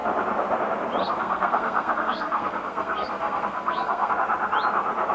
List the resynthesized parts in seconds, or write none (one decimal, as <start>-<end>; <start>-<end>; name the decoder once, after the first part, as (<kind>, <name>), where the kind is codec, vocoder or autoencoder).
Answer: 1.0-4.1 (codec, SNAC)